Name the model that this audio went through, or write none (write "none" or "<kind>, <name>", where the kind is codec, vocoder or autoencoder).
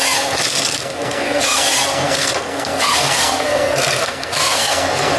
codec, SNAC